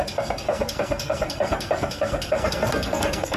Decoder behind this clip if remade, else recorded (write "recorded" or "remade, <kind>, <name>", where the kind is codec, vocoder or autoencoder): remade, codec, SNAC